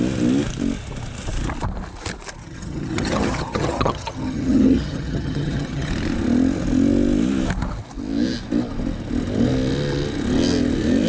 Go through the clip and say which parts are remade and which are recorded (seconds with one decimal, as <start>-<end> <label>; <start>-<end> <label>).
0.0-2.4 recorded; 2.4-5.9 remade; 5.9-11.1 recorded